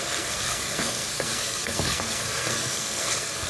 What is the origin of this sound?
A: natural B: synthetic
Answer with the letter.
B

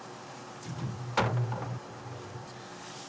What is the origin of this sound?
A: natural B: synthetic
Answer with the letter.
A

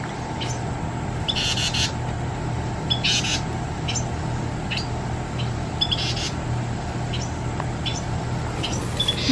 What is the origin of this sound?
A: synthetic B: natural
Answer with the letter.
B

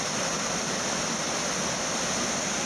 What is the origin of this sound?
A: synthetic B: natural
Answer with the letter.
B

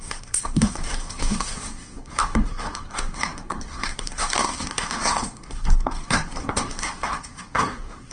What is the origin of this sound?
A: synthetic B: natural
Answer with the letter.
A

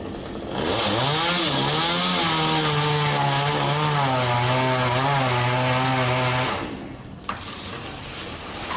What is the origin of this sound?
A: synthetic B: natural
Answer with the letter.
B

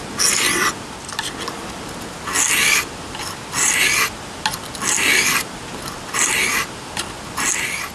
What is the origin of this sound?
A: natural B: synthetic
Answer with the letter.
A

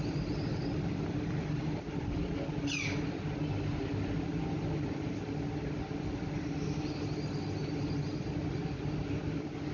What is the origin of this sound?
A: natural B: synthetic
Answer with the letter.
A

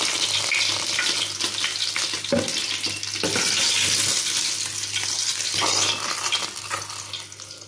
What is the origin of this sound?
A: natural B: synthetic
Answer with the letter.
A